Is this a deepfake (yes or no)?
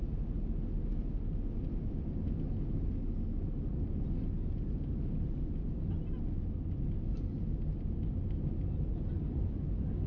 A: no